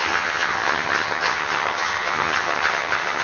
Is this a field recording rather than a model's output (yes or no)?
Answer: no